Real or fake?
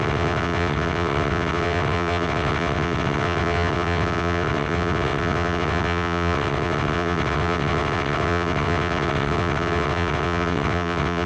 fake